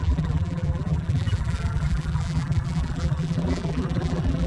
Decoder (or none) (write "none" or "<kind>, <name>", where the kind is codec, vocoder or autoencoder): vocoder, BigVGAN v2